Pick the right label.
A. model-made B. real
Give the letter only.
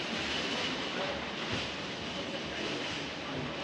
B